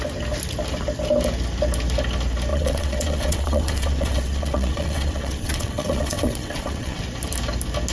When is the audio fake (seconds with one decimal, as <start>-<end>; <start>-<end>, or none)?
2.5-7.0